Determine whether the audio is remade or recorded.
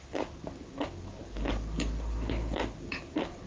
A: recorded